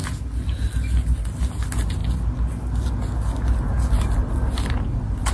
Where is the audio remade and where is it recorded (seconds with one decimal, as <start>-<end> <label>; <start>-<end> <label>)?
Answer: 0.0-5.3 recorded